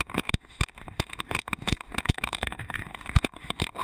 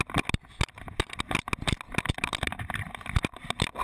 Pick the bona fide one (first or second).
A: second